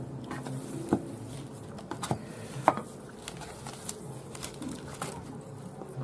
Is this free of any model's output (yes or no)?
yes